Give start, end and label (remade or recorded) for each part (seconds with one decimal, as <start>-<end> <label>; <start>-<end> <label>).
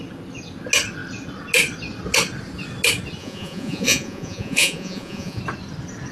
0.0-3.2 recorded; 3.2-5.4 remade; 5.4-6.1 recorded